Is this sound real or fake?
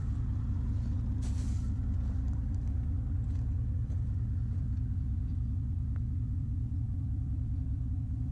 fake